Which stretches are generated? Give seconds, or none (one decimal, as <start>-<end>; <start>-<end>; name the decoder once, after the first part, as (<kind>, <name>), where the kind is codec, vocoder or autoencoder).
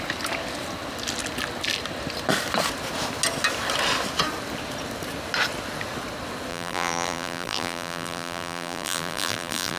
6.5-9.8 (vocoder, BigVGAN v2)